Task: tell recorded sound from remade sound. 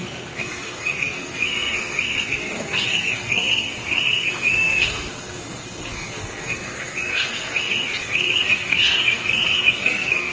remade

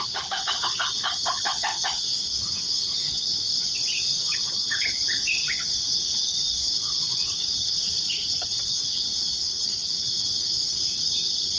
remade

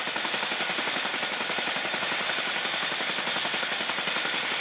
recorded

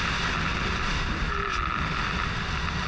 recorded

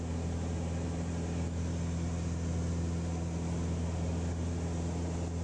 recorded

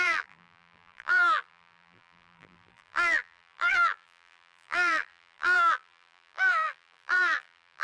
remade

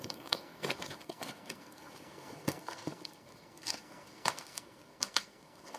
remade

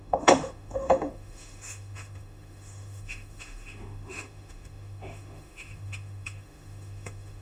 remade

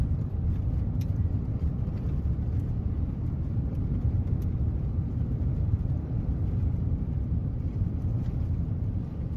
remade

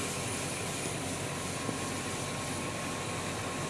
recorded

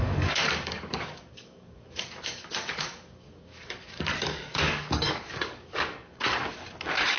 remade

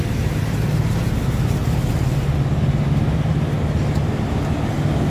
recorded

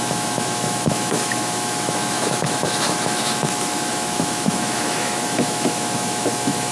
remade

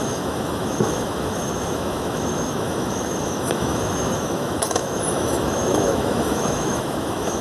remade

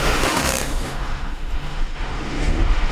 remade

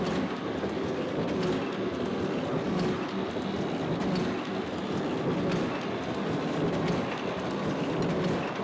recorded